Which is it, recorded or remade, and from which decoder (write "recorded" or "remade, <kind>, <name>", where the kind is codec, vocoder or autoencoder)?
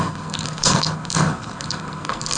remade, codec, SNAC